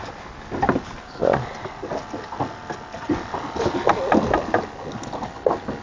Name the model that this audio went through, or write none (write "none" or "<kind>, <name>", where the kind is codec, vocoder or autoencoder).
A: none